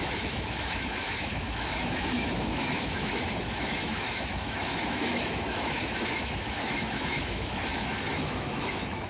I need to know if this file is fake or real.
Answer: fake